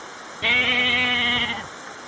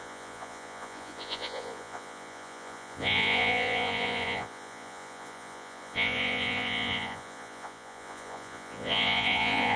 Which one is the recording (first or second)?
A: first